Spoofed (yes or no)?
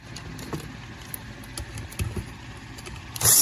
no